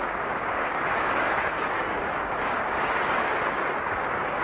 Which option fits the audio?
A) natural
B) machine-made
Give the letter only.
B